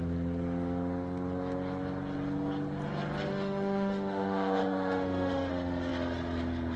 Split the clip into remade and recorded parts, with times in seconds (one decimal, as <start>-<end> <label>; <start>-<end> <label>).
0.0-3.3 recorded; 3.3-5.5 remade; 5.5-6.8 recorded